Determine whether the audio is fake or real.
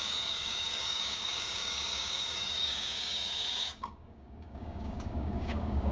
fake